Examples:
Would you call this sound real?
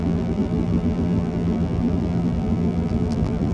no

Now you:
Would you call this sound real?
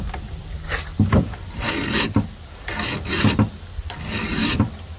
no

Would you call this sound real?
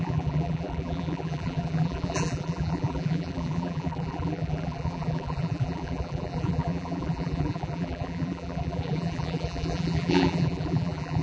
no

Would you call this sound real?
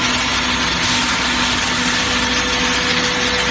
yes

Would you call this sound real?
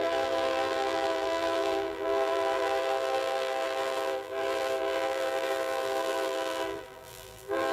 no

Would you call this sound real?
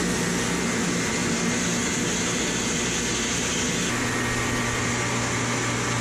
yes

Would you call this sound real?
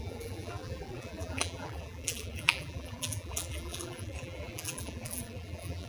no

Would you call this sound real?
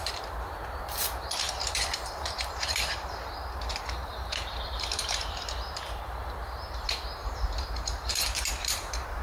no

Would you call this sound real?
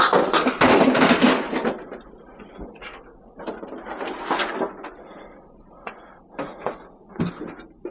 yes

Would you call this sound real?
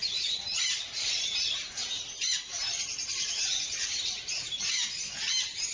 no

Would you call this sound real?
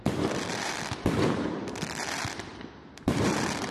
no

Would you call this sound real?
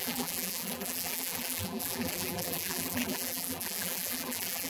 no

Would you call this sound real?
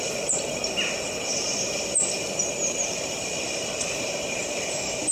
no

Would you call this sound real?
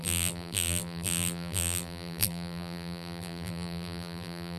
no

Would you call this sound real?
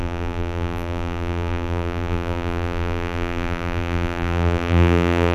no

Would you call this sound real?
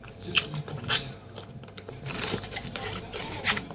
no